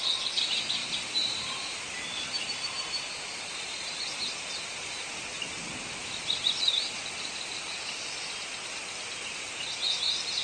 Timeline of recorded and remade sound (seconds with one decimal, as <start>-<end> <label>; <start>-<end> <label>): 0.0-10.4 recorded